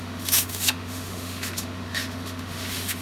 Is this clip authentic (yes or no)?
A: no